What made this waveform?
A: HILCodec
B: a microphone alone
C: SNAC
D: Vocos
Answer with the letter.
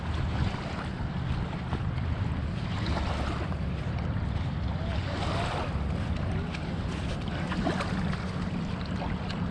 B